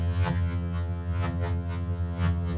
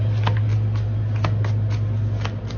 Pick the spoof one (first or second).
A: first